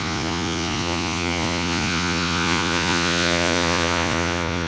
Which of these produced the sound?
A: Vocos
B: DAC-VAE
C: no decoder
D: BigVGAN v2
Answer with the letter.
A